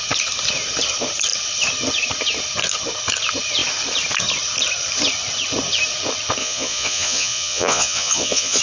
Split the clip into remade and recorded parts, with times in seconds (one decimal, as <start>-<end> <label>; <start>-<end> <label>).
0.0-6.4 recorded; 6.4-8.6 remade